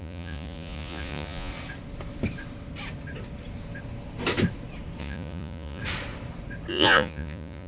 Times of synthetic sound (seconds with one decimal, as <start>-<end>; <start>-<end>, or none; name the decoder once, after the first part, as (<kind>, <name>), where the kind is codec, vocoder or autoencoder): 0.0-1.5 (vocoder, Vocos); 5.0-5.8; 6.7-7.7

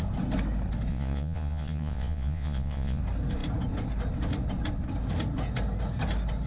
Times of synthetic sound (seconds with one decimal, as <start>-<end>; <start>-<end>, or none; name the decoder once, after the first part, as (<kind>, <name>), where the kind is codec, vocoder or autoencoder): 0.9-3.0 (vocoder, Vocos)

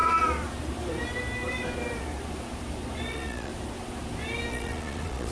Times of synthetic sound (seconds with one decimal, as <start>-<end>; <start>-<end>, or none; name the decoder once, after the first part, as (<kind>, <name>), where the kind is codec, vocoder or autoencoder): 3.1-3.5 (vocoder, Vocos); 4.5-5.3